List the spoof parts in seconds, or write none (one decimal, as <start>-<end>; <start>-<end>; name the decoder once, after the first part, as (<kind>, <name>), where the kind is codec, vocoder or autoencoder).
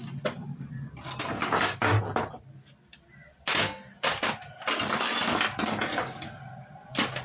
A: 1.4-2.0 (codec, DAC); 5.9-6.4